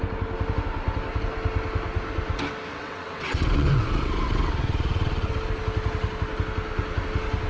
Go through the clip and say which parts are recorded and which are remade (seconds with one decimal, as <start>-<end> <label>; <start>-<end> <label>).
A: 0.0-2.7 recorded; 2.7-5.3 remade; 5.3-7.5 recorded